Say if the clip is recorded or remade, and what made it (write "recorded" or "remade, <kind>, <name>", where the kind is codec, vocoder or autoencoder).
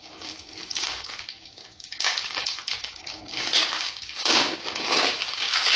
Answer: remade, codec, DAC